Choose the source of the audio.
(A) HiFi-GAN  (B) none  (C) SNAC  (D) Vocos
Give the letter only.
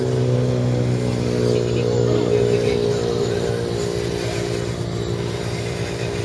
B